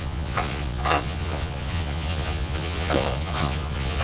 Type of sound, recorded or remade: remade